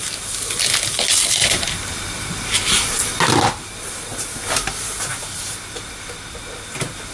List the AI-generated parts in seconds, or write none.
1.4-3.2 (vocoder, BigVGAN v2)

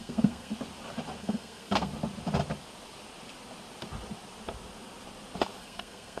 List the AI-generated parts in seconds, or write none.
0.0-0.5 (codec, SNAC); 1.2-1.9; 5.6-6.2

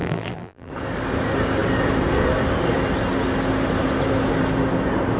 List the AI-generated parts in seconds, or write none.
0.0-0.7 (vocoder, BigVGAN v2)

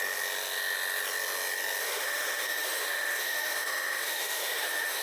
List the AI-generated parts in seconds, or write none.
1.8-5.0 (autoencoder, DAC-VAE)

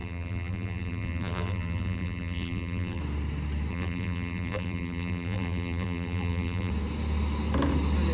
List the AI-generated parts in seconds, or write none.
0.0-3.0 (vocoder, BigVGAN v2); 3.7-6.7

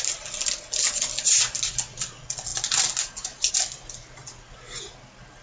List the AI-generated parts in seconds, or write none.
none

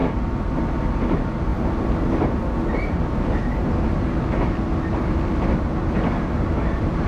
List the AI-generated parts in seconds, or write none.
none